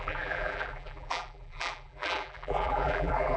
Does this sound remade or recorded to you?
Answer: remade